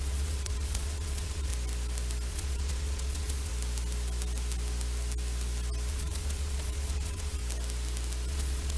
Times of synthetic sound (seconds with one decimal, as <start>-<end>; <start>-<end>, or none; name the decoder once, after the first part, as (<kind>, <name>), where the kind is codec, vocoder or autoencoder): 0.0-1.5 (vocoder, Vocos); 2.3-3.5; 5.9-7.4; 8.3-8.8